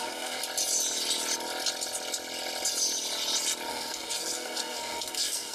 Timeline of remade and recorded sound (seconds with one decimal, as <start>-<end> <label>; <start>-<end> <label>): 0.0-0.4 remade; 0.4-3.7 recorded; 3.7-5.5 remade